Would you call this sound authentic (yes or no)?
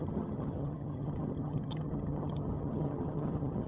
no